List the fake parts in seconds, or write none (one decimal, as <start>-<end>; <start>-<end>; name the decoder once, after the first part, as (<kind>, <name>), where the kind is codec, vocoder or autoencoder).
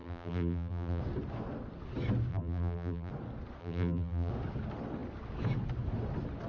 0.0-1.0 (vocoder, BigVGAN v2); 2.3-3.1; 3.6-4.3